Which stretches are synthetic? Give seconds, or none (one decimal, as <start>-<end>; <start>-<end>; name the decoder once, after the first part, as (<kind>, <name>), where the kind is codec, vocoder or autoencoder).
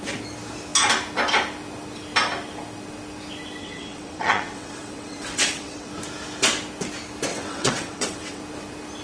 3.6-5.9 (vocoder, WaveNeXt); 7.3-8.4